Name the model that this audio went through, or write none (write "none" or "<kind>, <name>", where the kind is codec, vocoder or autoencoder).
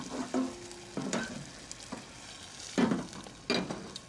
none